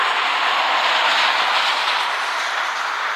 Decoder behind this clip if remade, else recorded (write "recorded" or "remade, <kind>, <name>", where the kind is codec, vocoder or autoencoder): recorded